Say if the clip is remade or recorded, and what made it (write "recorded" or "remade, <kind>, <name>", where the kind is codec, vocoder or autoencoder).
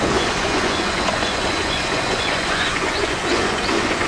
remade, vocoder, Vocos